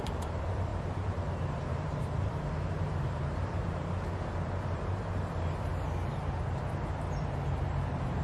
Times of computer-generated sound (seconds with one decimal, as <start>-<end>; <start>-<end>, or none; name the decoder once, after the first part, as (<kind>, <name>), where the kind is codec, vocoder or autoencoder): 0.0-5.7 (vocoder, BigVGAN v2); 6.4-8.2